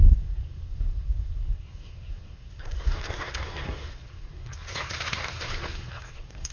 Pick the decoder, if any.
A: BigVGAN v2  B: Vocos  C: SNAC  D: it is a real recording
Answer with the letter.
C